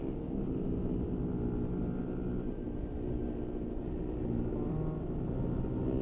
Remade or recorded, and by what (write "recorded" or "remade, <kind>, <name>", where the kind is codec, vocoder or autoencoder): recorded